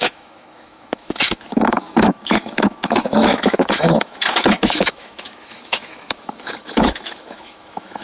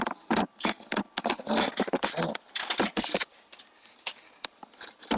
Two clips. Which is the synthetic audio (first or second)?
first